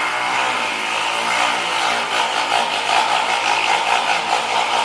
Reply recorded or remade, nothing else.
recorded